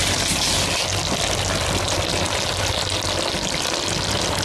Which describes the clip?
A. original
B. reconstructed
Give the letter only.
A